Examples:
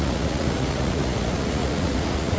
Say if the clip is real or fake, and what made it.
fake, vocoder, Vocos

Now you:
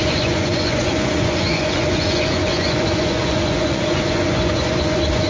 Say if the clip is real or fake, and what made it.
fake, vocoder, Vocos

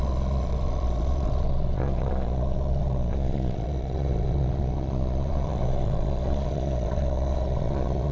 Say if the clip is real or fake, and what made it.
fake, vocoder, Vocos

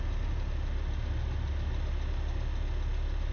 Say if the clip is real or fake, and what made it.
real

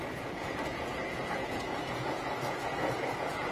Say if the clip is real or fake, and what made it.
fake, vocoder, Vocos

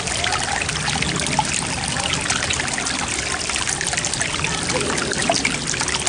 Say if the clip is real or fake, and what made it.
real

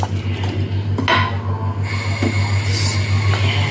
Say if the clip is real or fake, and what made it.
real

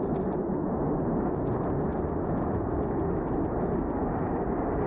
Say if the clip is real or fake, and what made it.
real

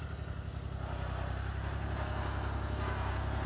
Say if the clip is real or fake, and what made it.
real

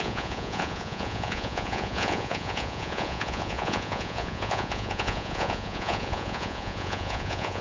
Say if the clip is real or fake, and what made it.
fake, vocoder, Vocos